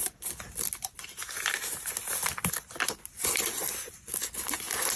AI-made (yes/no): no